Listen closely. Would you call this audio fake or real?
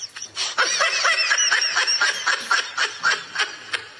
real